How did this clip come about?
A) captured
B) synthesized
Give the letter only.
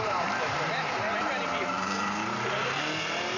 B